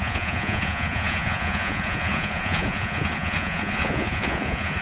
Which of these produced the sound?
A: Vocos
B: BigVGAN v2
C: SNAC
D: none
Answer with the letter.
A